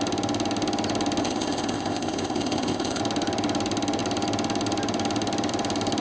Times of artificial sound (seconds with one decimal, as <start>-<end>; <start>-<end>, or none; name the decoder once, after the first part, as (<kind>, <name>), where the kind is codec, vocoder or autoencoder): 1.2-3.0 (codec, ZipCodec)